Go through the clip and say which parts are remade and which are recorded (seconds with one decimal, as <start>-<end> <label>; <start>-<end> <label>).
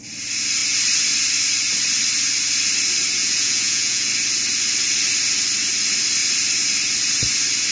0.0-3.2 recorded; 3.2-4.1 remade; 4.1-7.7 recorded